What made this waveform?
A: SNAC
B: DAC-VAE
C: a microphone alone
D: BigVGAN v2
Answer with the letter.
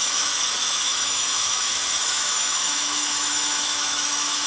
B